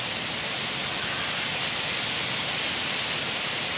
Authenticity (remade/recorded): recorded